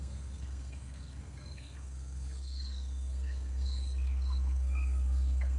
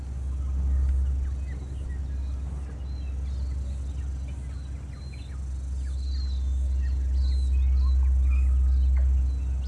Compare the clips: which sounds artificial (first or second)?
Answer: first